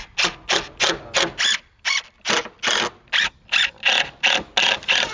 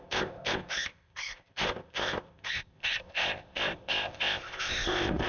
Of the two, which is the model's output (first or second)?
second